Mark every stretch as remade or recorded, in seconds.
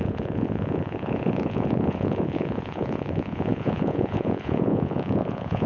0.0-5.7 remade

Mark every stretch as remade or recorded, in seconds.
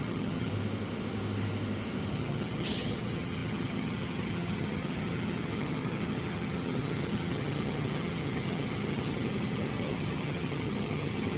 0.0-0.5 remade; 0.5-2.1 recorded; 2.1-11.4 remade